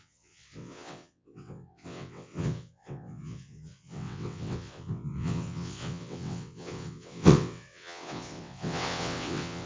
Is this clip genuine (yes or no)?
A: no